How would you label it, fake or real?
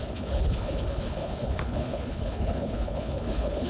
fake